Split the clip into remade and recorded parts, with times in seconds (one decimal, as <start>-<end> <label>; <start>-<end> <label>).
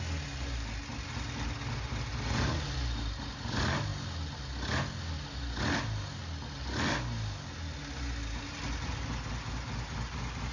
0.0-10.5 recorded